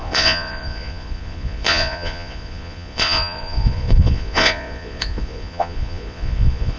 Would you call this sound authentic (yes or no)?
no